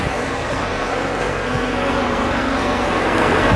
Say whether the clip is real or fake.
fake